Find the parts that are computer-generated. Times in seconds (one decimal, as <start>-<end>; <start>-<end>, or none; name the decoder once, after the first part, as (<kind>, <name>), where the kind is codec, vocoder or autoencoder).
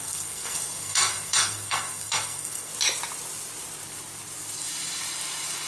0.0-2.7 (codec, SNAC)